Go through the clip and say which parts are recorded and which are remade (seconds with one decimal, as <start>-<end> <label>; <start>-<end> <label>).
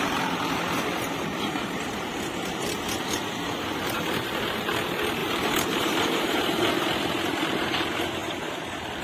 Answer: 0.0-1.6 recorded; 1.6-2.3 remade; 2.3-5.2 recorded; 5.2-6.4 remade; 6.4-9.0 recorded